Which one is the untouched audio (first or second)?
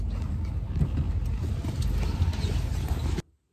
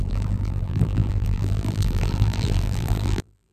first